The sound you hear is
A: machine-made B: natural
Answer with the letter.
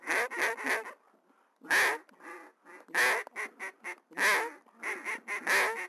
B